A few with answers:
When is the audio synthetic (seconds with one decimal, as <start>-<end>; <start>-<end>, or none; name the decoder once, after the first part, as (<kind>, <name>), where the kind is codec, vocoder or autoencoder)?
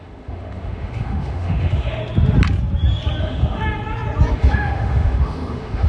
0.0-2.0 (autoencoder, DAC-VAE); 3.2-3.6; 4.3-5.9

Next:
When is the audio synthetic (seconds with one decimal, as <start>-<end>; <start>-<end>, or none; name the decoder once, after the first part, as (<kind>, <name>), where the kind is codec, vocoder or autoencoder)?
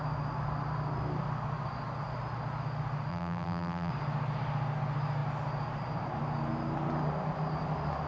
3.1-3.9 (vocoder, BigVGAN v2)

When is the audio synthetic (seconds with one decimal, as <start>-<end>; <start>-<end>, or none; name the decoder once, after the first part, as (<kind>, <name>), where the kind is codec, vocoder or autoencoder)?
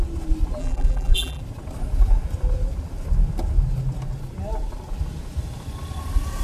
0.6-1.4 (vocoder, BigVGAN v2)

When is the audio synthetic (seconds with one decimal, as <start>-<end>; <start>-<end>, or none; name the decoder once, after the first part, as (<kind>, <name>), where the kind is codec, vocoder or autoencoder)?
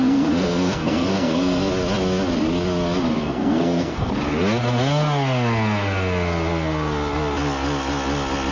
0.0-1.7 (codec, SNAC); 3.2-4.1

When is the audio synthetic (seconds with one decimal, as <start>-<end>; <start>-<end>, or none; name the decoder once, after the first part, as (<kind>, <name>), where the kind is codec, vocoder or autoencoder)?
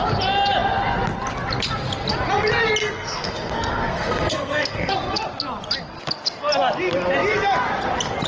2.8-4.9 (codec, SNAC)